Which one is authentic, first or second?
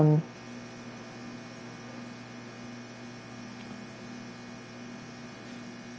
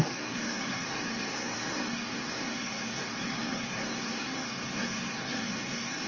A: first